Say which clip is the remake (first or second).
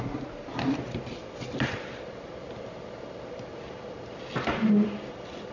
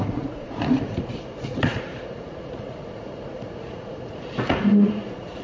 second